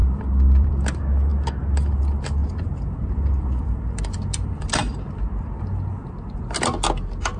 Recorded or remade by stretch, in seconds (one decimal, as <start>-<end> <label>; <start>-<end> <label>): 0.0-0.7 remade; 0.7-2.4 recorded; 2.4-6.4 remade; 6.4-7.4 recorded